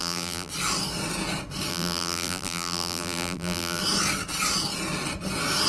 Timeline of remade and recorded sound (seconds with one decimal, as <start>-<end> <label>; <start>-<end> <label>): 0.0-0.5 remade; 0.5-1.7 recorded; 1.7-3.8 remade; 3.8-5.7 recorded